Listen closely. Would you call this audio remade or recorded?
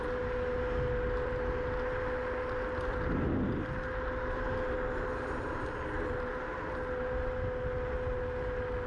recorded